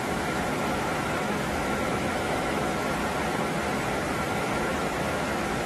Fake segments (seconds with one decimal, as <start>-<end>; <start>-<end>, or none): 0.0-3.0; 4.1-5.7